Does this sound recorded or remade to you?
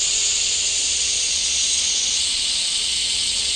remade